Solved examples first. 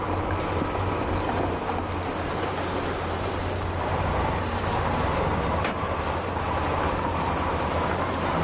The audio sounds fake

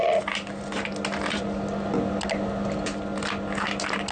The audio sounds real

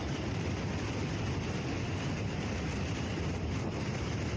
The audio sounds fake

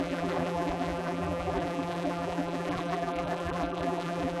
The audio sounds fake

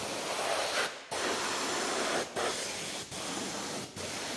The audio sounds real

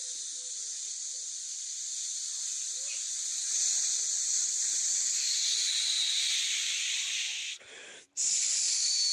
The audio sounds real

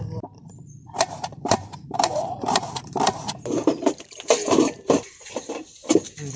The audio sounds fake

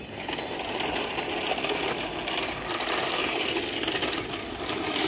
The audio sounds real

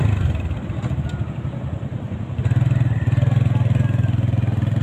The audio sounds real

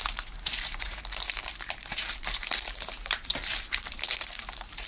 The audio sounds fake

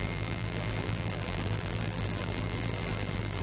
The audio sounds fake